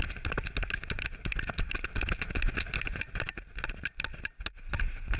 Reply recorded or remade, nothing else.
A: recorded